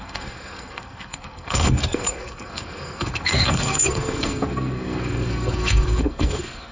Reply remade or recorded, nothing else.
remade